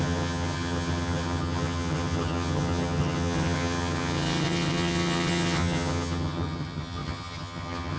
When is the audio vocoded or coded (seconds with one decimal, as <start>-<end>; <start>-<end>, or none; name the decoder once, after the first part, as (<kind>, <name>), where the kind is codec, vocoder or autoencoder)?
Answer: 0.0-8.0 (vocoder, HiFi-GAN)